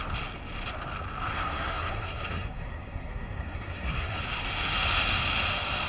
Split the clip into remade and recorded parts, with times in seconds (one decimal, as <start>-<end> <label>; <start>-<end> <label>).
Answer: 0.0-1.3 recorded; 1.3-4.2 remade; 4.2-5.9 recorded